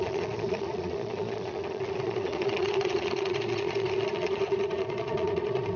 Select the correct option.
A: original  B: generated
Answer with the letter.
B